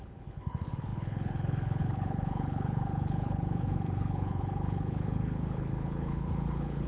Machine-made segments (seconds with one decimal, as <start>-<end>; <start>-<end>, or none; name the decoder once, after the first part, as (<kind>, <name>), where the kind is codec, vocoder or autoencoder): 0.0-6.9 (codec, HILCodec)